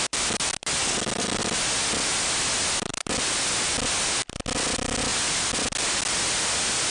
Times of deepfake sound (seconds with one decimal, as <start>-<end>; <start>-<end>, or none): 0.8-1.4